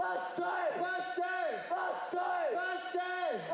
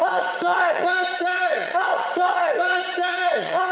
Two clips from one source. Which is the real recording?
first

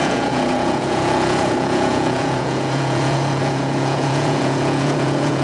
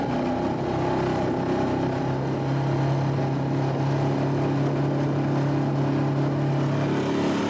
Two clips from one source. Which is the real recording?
second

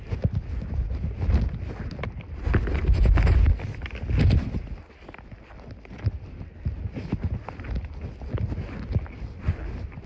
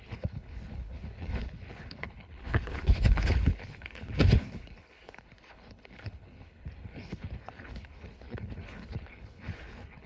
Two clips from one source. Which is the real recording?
first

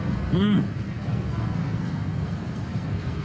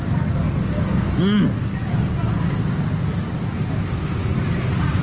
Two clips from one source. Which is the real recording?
second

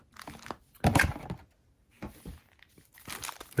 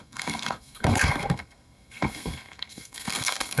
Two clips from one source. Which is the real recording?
first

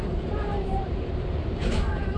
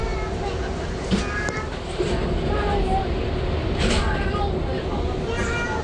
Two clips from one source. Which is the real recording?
second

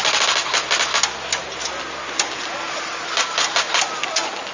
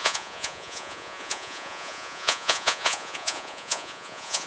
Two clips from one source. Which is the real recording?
first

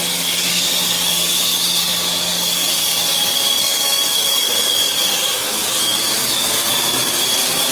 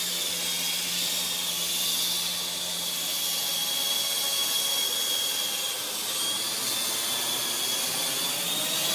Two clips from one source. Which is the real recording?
second